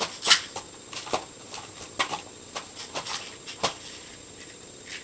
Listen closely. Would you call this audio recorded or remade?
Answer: recorded